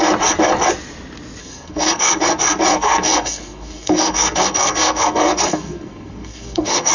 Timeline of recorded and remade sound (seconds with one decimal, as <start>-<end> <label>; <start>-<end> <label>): 0.0-1.4 recorded; 1.4-2.1 remade; 2.1-2.7 recorded; 2.7-6.9 remade